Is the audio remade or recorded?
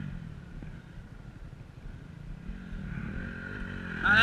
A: recorded